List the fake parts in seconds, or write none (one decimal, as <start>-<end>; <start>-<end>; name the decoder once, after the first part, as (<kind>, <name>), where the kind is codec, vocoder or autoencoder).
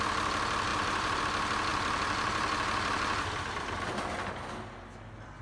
0.7-1.2 (vocoder, BigVGAN v2); 1.7-4.3